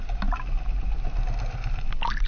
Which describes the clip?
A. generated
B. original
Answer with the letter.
B